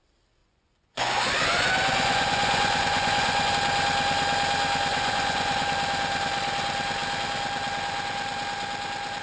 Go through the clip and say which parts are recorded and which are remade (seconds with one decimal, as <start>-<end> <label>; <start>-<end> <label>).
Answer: 0.0-0.4 recorded; 0.4-3.5 remade; 3.5-4.9 recorded; 4.9-5.7 remade; 5.7-9.2 recorded